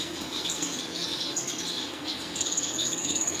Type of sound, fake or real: fake